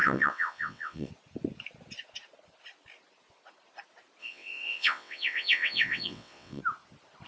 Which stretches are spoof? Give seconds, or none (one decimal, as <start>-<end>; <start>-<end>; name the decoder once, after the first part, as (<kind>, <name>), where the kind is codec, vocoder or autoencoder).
0.0-1.1 (vocoder, WaveNeXt); 4.2-6.6